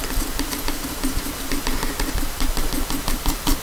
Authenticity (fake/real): fake